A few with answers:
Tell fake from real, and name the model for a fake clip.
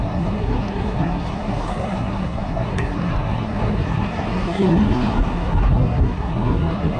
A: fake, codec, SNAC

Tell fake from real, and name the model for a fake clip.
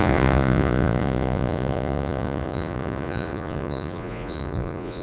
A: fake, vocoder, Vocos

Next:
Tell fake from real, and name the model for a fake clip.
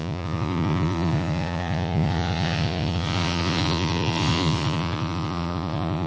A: fake, vocoder, Vocos